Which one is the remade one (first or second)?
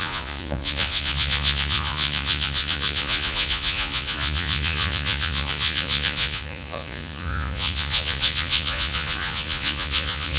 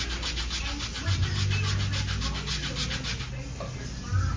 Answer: first